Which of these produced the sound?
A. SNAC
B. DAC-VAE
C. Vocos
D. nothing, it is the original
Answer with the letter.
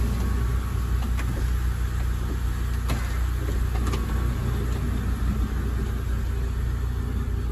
D